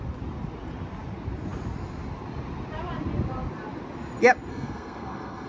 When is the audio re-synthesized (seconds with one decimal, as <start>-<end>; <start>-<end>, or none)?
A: 4.5-5.5